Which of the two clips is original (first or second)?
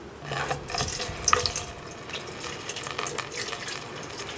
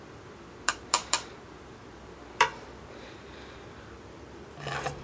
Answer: first